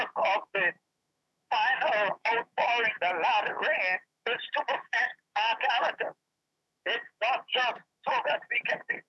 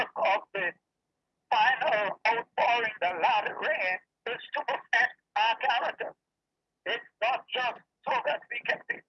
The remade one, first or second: first